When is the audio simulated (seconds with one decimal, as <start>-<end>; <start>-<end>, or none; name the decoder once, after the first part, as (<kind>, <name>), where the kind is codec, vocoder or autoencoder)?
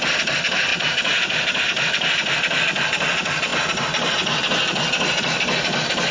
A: 0.0-3.5 (vocoder, BigVGAN v2); 5.2-6.1